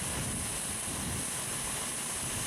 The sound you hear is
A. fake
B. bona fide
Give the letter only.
B